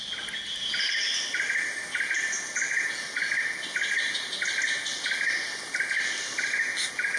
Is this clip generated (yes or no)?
no